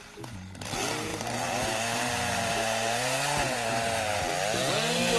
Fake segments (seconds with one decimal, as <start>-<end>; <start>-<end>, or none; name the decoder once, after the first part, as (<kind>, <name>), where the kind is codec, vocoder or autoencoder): 1.1-4.2 (vocoder, BigVGAN v2)

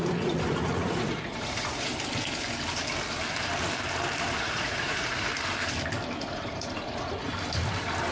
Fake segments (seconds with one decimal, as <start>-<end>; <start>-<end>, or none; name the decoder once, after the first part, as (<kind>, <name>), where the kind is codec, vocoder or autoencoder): 0.0-1.9 (vocoder, Vocos); 4.4-5.3; 6.2-7.3

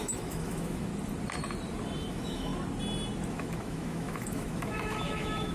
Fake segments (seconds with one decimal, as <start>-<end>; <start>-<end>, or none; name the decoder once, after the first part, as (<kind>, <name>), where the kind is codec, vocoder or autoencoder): 0.0-0.9 (autoencoder, DAC-VAE); 2.1-2.5; 3.3-5.5

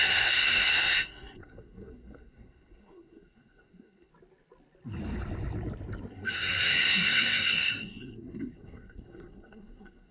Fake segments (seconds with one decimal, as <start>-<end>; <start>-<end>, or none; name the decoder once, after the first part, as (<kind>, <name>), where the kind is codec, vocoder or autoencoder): 0.0-4.1 (codec, SNAC); 6.1-10.1

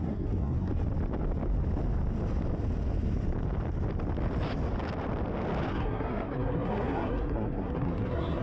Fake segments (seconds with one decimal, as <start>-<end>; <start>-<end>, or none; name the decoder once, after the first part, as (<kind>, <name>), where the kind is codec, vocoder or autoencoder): 0.0-0.7 (codec, SNAC); 5.7-8.4

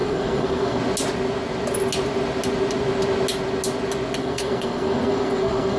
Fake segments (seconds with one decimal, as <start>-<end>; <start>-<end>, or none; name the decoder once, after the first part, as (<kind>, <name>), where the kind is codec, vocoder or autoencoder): 0.0-0.8 (codec, SNAC); 4.2-5.8